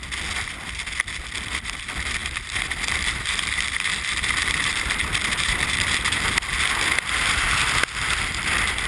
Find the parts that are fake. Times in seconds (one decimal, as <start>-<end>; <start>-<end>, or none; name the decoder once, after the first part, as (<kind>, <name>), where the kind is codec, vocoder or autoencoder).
2.2-6.2 (vocoder, BigVGAN v2)